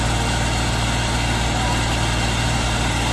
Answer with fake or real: real